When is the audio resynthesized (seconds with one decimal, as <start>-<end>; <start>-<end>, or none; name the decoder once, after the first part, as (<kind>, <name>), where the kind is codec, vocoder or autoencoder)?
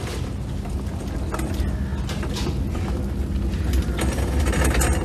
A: none